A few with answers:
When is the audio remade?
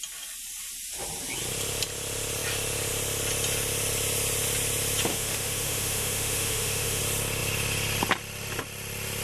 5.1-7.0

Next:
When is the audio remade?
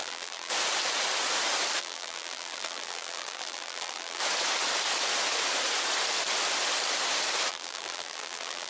0.0-0.5; 1.8-4.2; 7.5-8.7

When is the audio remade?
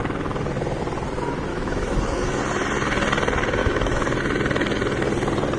1.5-2.4; 3.6-4.2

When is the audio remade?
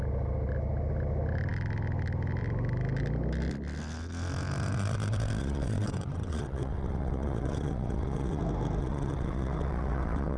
5.4-8.4; 8.8-10.4